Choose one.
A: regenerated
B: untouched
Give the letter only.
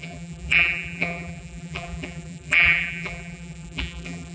A